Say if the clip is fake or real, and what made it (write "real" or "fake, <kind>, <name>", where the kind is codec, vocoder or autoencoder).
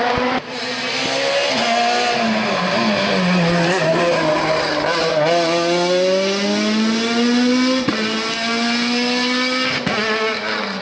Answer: real